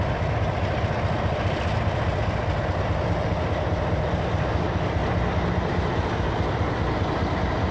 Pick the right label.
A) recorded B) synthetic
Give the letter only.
A